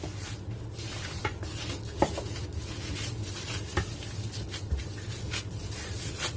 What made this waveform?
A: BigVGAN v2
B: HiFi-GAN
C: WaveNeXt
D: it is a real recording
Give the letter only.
D